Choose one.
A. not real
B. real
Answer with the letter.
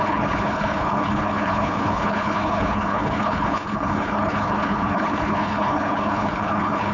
A